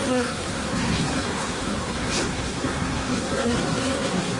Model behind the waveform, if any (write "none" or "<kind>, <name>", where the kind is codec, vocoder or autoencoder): codec, SNAC